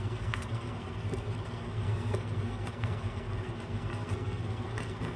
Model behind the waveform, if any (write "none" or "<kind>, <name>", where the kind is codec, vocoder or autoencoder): codec, SNAC